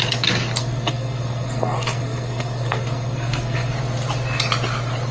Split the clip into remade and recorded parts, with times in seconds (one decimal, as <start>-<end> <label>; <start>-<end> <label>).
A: 0.0-0.6 recorded; 0.6-3.7 remade; 3.7-5.1 recorded